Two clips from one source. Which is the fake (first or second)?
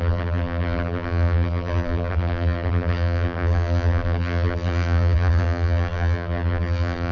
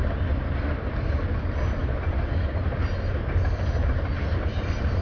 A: first